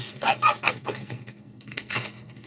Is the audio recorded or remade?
remade